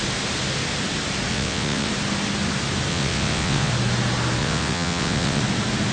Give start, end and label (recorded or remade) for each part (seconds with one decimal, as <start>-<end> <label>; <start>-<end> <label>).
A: 0.0-1.3 recorded; 1.3-1.9 remade; 1.9-2.9 recorded; 2.9-3.7 remade; 3.7-4.4 recorded; 4.4-5.4 remade; 5.4-5.9 recorded